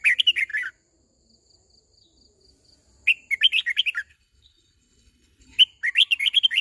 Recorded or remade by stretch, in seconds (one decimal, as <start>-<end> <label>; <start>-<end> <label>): 0.0-4.1 recorded; 4.1-5.6 remade; 5.6-6.6 recorded